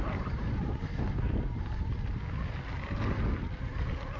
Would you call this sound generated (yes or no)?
no